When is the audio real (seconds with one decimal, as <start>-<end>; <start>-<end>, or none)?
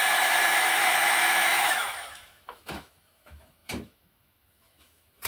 none